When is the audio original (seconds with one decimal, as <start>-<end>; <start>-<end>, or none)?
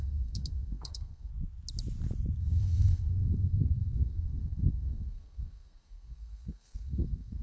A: 1.3-2.4